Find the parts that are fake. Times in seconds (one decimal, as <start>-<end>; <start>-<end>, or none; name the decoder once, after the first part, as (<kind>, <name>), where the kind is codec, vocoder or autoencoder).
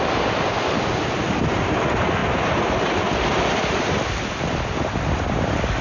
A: none